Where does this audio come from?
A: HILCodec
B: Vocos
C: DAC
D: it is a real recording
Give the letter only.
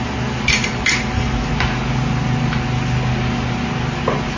D